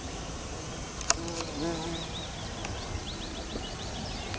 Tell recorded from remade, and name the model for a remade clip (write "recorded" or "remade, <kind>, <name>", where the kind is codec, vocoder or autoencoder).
recorded